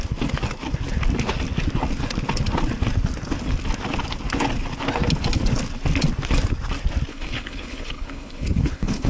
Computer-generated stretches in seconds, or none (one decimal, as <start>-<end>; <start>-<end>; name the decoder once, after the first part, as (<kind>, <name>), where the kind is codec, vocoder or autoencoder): 7.1-9.1 (codec, HILCodec)

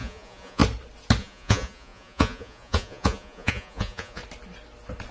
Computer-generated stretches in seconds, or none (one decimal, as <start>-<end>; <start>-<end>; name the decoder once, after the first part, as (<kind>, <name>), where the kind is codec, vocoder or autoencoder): 0.0-0.6 (vocoder, Vocos); 1.2-4.2

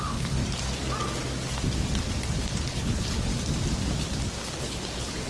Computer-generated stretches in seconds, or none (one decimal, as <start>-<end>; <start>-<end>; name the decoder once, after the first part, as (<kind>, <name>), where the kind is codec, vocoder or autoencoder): 0.0-0.4 (codec, HILCodec); 2.3-3.3; 4.6-5.3

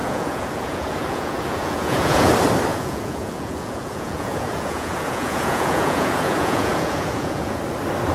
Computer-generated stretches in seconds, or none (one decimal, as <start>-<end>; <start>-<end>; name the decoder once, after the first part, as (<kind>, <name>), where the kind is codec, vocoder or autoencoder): 0.0-2.3 (vocoder, Vocos); 2.7-7.6

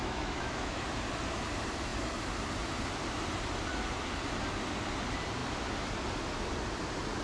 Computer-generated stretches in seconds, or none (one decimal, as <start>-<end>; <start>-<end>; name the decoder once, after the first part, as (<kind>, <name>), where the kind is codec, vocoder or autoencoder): 0.0-0.8 (autoencoder, DAC-VAE)